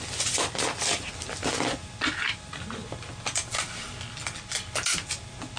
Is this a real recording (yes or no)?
yes